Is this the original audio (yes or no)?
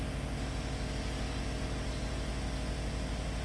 yes